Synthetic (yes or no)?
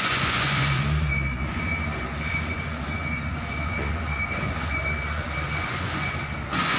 yes